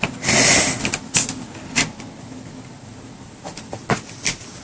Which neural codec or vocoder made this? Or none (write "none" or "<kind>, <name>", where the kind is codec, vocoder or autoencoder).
none